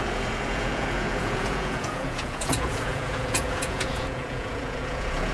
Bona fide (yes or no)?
no